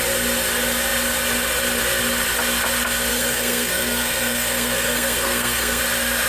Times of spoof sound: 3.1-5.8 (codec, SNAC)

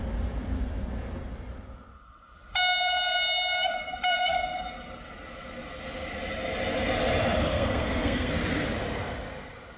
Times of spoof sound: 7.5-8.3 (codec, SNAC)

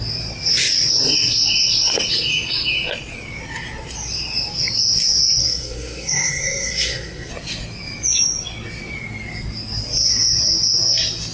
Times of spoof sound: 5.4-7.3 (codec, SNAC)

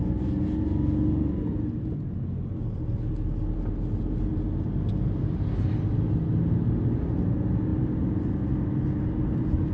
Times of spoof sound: none

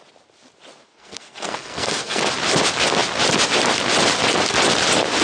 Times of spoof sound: 0.7-2.2 (codec, SNAC)